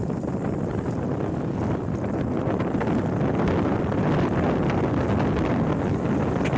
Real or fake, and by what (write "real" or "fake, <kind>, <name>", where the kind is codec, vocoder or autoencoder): real